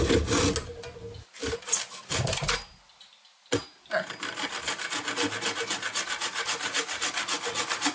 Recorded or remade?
recorded